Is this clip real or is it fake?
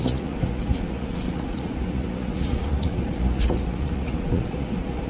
fake